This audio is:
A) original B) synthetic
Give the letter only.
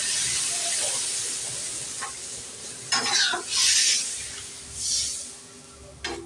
A